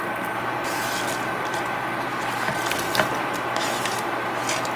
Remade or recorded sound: recorded